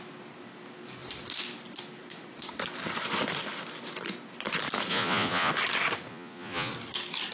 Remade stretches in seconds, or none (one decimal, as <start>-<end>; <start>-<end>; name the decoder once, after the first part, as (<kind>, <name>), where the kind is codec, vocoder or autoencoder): 4.9-5.5 (vocoder, Vocos); 6.1-6.7